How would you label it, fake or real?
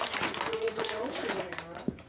fake